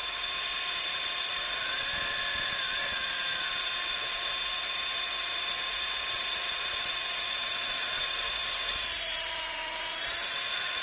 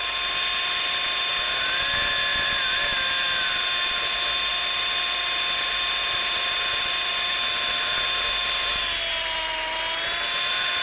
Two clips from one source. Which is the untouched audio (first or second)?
second